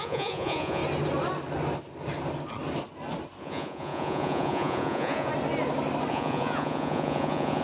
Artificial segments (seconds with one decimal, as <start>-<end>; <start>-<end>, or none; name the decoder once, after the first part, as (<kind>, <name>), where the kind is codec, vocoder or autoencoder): 0.0-0.8 (vocoder, Vocos); 3.4-5.3; 6.1-7.6